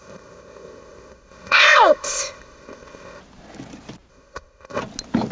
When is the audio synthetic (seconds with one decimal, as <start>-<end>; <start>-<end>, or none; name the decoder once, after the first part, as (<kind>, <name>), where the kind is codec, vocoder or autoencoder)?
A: 0.0-3.2 (codec, ZipCodec); 4.1-4.8